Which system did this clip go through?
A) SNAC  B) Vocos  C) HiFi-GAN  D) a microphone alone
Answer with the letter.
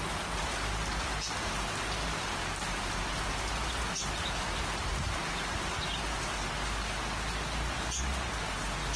D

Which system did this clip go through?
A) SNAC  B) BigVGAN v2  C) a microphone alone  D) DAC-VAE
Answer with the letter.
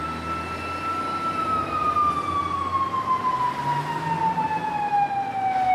C